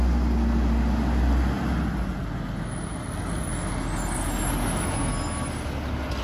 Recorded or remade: recorded